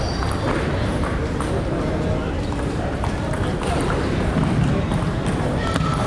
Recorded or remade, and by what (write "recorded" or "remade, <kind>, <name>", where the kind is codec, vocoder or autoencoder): recorded